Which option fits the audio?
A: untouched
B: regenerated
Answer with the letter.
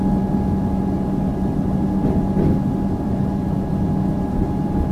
A